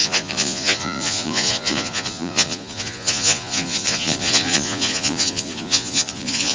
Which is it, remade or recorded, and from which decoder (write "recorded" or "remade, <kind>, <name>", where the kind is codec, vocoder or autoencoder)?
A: remade, vocoder, Vocos